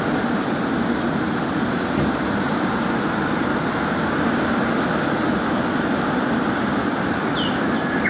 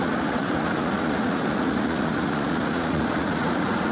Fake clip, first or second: second